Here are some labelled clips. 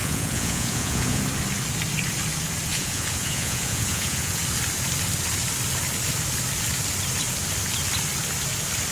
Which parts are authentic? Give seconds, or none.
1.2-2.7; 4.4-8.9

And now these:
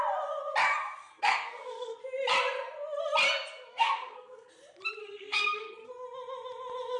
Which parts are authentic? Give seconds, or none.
0.0-1.0; 2.0-3.7; 4.5-5.0; 5.9-7.0

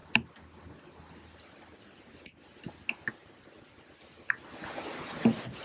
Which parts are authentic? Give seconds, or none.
0.0-5.6

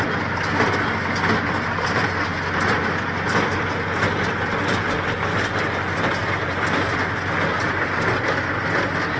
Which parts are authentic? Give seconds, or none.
0.0-9.2

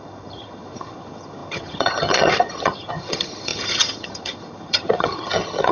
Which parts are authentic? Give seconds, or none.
none

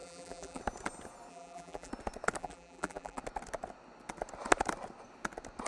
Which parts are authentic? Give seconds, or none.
0.6-1.3; 1.9-2.4; 3.2-5.7

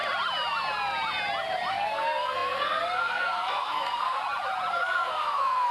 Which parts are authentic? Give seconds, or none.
0.0-1.7; 4.2-4.7

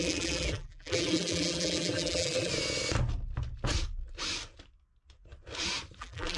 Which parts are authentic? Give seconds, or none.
2.5-6.0